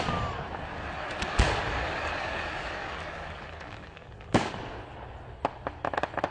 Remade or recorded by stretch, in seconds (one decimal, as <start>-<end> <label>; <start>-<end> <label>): 0.0-0.7 recorded; 0.7-4.5 remade; 4.5-6.3 recorded